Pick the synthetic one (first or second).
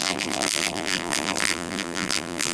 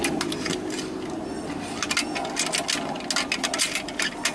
first